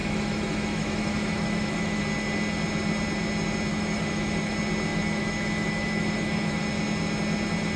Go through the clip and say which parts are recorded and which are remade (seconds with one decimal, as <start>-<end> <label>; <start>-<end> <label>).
0.0-2.0 remade; 2.0-3.7 recorded; 3.7-4.5 remade; 4.5-4.9 recorded; 4.9-6.6 remade; 6.6-7.8 recorded